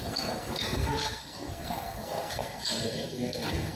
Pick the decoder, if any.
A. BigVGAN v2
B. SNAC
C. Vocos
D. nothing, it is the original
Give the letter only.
B